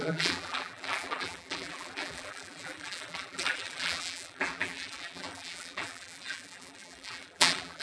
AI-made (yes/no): yes